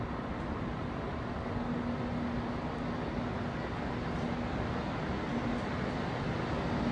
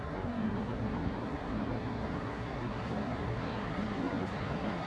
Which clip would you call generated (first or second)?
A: second